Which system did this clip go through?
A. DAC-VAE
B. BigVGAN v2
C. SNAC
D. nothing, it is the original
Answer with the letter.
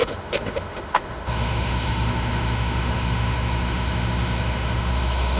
A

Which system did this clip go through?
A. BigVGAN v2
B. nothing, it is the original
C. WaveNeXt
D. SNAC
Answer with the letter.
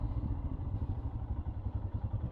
B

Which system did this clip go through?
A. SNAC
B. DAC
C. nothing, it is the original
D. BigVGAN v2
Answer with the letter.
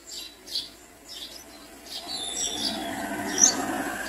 C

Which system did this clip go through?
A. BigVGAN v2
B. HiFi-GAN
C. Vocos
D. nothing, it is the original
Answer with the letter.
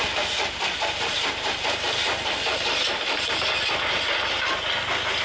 D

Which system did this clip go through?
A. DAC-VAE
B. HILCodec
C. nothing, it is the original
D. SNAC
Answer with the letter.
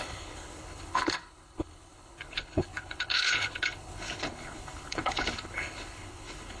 B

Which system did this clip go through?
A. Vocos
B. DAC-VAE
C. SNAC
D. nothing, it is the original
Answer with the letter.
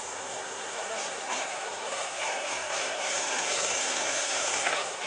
C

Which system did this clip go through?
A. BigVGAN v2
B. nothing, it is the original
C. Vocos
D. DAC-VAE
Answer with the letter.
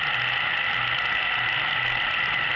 B